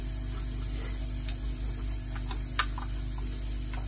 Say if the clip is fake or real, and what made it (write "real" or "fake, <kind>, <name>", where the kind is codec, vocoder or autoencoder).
real